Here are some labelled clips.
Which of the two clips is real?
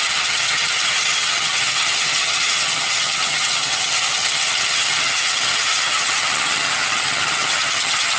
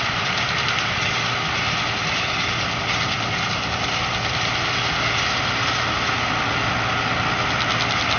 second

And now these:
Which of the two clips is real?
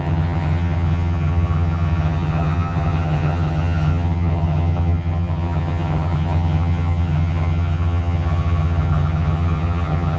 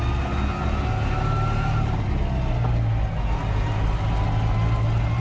second